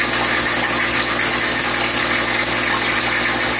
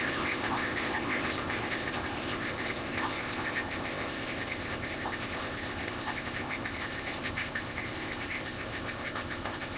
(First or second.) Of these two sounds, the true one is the first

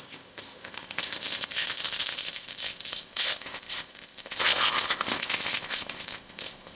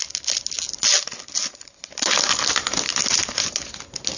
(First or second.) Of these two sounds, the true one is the second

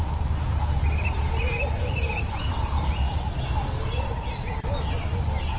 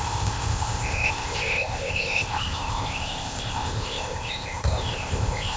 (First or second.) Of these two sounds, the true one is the first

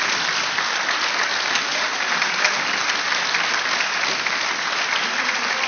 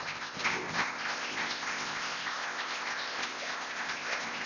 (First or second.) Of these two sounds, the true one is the first